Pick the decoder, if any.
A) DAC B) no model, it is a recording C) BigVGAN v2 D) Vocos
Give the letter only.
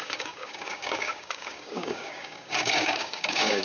A